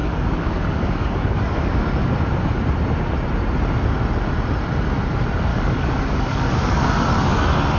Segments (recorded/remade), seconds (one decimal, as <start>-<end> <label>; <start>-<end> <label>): 0.0-1.8 remade; 1.8-5.5 recorded; 5.5-6.9 remade; 6.9-7.8 recorded